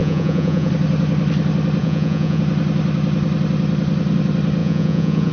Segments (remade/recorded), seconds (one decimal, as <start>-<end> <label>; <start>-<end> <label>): 0.0-0.7 remade; 0.7-1.8 recorded; 1.8-2.4 remade; 2.4-4.6 recorded; 4.6-5.3 remade